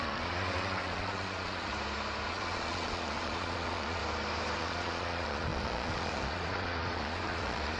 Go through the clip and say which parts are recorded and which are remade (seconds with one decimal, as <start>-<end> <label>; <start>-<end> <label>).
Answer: 0.0-1.7 remade; 1.7-2.3 recorded; 2.3-4.0 remade; 4.0-4.6 recorded; 4.6-7.8 remade